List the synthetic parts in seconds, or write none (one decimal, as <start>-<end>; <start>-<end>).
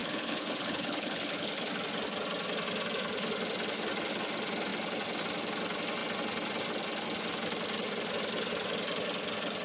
0.0-1.7